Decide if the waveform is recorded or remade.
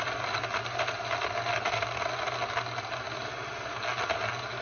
recorded